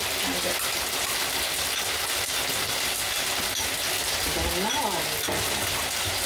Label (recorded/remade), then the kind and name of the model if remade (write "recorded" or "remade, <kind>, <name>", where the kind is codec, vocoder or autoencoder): recorded